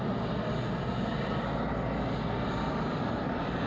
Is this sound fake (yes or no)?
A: no